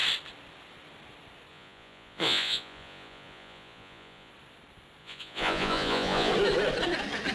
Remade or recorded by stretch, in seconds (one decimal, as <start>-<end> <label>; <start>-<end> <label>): 0.0-1.5 recorded; 1.5-4.3 remade; 4.3-5.0 recorded; 5.0-6.3 remade; 6.3-7.3 recorded